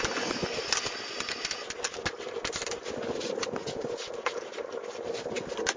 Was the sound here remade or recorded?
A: recorded